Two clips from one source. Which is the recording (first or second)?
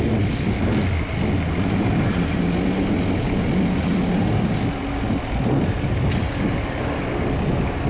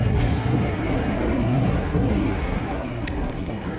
first